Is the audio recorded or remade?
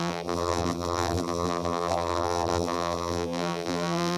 remade